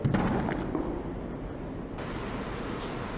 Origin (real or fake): real